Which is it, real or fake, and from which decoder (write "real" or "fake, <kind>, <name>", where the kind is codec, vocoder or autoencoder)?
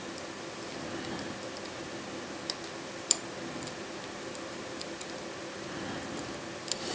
real